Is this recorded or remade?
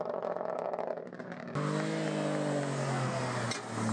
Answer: recorded